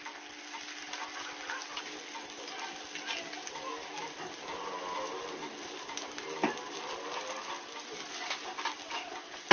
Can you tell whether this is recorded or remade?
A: recorded